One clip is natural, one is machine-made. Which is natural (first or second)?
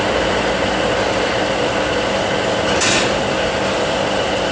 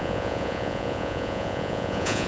first